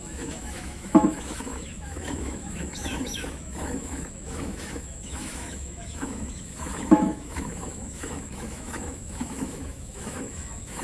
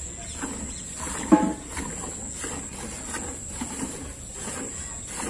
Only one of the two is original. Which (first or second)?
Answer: second